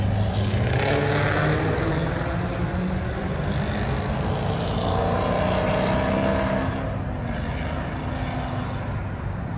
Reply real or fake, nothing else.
real